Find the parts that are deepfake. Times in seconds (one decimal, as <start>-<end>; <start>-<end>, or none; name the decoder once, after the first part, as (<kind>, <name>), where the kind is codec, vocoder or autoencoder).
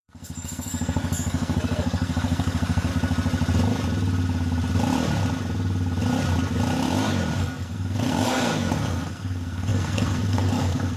0.0-2.9 (codec, SNAC); 7.4-11.0